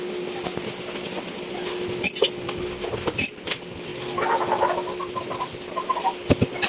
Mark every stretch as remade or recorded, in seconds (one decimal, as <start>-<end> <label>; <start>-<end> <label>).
0.0-6.7 recorded